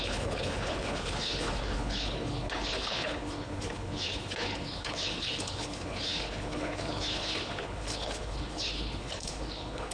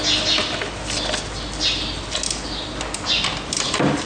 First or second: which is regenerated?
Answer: first